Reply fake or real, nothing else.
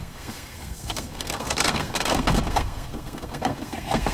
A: fake